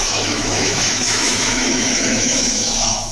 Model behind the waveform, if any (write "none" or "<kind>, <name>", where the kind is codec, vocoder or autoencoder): autoencoder, DAC-VAE